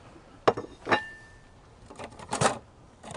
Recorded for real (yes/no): yes